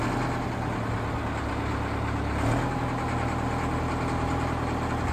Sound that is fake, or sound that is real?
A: real